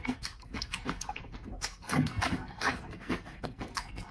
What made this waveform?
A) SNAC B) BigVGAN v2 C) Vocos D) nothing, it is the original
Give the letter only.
A